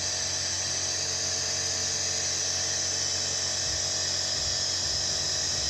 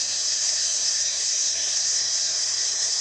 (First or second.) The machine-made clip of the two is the second